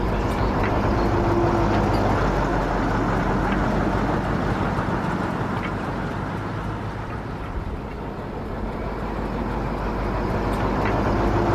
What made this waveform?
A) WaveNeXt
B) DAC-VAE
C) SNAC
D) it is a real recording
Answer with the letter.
D